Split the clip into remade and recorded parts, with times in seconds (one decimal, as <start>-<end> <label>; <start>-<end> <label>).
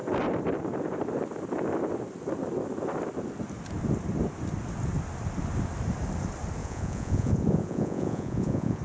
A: 0.0-6.6 recorded; 6.6-8.8 remade